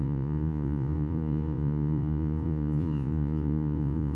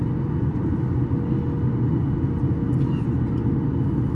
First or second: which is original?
second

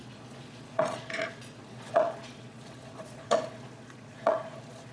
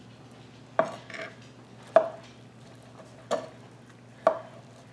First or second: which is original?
second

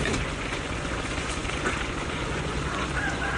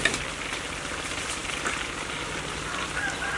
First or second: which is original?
second